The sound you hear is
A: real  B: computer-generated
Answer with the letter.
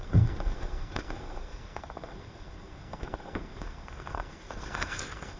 B